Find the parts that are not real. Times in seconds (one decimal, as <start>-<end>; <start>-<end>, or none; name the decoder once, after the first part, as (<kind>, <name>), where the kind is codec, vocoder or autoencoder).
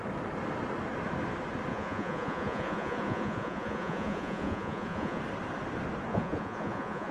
1.7-5.2 (vocoder, Vocos); 6.1-7.1